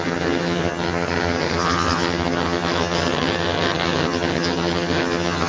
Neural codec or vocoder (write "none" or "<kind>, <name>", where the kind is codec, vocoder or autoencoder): vocoder, HiFi-GAN